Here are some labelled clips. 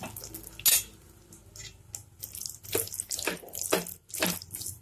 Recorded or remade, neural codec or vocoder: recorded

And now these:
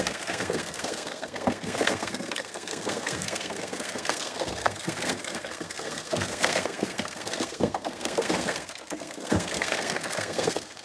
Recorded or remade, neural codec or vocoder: remade, codec, SNAC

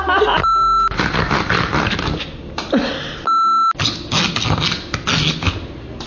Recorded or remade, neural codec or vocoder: recorded